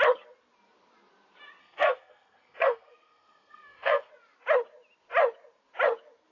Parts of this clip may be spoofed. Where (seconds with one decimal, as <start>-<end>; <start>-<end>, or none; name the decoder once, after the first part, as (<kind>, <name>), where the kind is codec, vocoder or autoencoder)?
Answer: 1.6-4.1 (codec, SNAC)